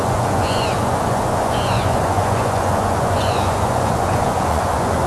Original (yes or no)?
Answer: no